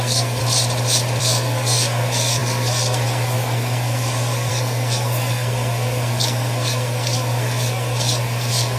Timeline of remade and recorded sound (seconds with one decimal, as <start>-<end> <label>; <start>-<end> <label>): 0.0-0.4 remade; 0.4-1.2 recorded; 1.2-8.8 remade